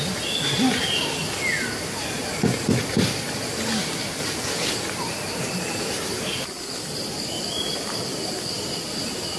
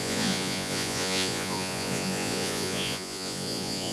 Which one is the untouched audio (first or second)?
first